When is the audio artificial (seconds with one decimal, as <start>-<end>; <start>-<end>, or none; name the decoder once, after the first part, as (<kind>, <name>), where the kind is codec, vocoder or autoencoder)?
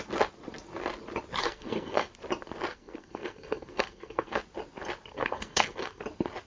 1.4-2.1 (codec, SNAC); 2.7-4.4; 5.1-6.0